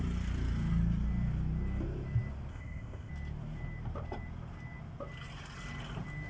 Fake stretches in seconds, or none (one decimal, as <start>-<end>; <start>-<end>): 2.5-3.1